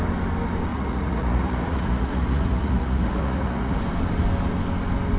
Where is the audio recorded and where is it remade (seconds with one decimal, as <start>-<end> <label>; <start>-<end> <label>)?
0.0-0.7 recorded; 0.7-3.8 remade; 3.8-5.2 recorded